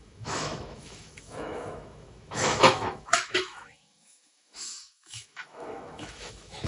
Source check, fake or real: fake